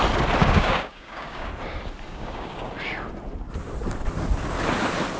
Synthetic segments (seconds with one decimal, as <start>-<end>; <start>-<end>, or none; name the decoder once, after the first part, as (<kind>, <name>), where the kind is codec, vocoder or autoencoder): 0.4-1.5 (codec, DAC); 2.1-2.7